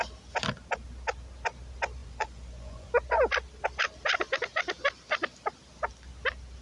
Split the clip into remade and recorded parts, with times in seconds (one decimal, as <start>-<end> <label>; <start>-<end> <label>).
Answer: 0.0-2.0 recorded; 2.0-2.9 remade; 2.9-6.6 recorded